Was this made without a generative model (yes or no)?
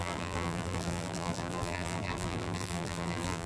no